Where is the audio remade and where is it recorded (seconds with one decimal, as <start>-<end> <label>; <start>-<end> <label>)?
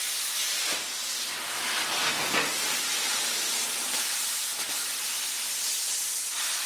0.0-6.7 recorded